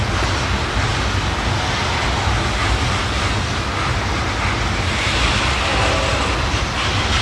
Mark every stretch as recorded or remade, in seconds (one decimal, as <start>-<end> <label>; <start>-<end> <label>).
0.0-7.2 recorded